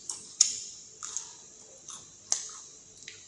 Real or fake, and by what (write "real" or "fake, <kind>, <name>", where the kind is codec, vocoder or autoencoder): real